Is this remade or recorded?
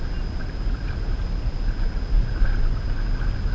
recorded